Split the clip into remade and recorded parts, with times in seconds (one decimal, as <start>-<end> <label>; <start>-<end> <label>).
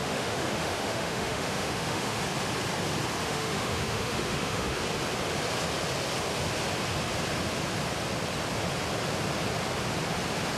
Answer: 0.0-2.2 remade; 2.2-3.2 recorded; 3.2-4.8 remade; 4.8-10.6 recorded